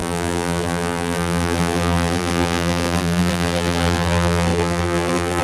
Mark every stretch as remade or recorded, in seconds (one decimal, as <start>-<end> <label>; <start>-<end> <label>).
0.0-5.4 remade